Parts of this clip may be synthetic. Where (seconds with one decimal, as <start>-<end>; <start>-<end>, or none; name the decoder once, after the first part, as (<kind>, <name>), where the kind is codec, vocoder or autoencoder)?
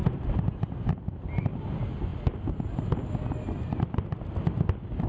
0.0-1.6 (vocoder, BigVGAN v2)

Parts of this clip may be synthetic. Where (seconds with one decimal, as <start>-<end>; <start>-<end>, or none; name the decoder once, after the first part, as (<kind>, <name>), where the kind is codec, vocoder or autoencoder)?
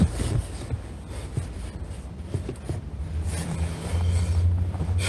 1.2-3.9 (vocoder, BigVGAN v2)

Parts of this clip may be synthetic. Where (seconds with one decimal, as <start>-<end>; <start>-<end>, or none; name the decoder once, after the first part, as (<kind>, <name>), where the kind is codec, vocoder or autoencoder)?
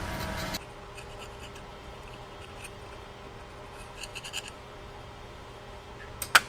1.7-3.2 (vocoder, BigVGAN v2); 4.1-5.9